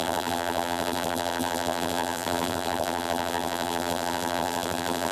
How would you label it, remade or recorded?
remade